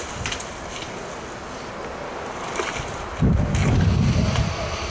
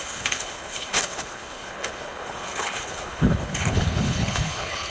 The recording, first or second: first